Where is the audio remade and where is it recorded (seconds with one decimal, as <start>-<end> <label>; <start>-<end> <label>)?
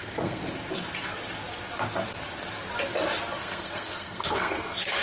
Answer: 0.0-0.4 remade; 0.4-3.4 recorded; 3.4-5.0 remade